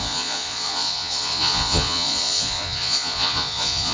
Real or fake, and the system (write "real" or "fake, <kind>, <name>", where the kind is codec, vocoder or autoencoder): fake, vocoder, Vocos